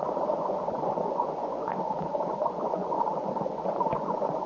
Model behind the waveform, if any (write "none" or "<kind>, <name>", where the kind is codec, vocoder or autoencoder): vocoder, Vocos